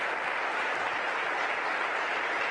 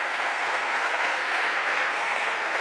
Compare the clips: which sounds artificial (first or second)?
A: second